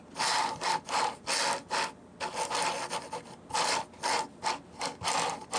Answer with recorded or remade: recorded